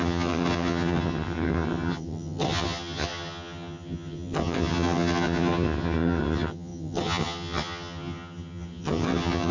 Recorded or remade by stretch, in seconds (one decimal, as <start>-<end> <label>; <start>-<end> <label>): 0.0-9.5 remade